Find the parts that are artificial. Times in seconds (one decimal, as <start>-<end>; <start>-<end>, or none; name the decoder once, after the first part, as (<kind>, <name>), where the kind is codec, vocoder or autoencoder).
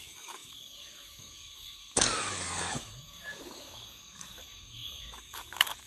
0.0-5.9 (codec, DAC)